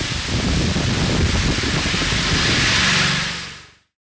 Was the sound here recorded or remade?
recorded